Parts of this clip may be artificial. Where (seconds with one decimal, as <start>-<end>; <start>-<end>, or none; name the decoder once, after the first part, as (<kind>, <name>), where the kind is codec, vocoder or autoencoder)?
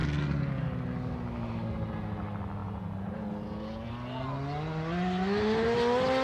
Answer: 2.6-3.9 (vocoder, Vocos)